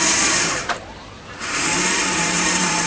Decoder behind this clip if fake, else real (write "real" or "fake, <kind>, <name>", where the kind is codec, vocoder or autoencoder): fake, vocoder, BigVGAN v2